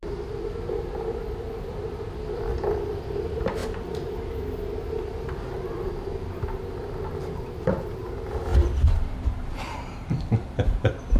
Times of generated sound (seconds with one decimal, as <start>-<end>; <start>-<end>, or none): 0.0-11.2